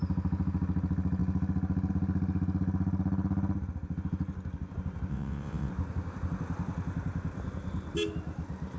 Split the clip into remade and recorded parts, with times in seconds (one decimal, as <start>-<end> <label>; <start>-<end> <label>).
0.0-5.1 recorded; 5.1-5.7 remade; 5.7-8.8 recorded